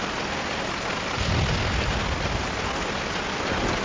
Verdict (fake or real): real